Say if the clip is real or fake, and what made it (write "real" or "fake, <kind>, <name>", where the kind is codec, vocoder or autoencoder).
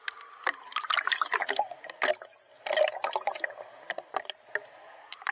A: real